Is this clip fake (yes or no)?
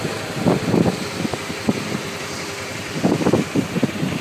yes